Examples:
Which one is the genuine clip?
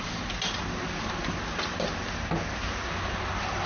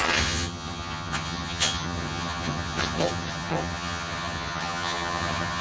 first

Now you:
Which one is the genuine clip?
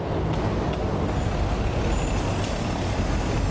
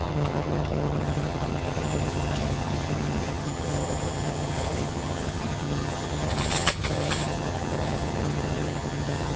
first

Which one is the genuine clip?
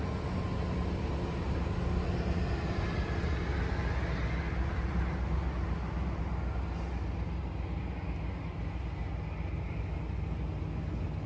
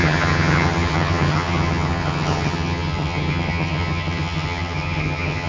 first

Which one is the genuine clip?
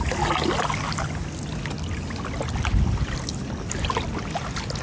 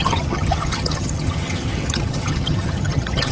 first